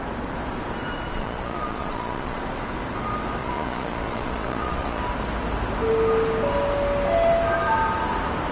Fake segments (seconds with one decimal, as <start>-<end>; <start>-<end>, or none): 1.1-2.4; 3.4-5.0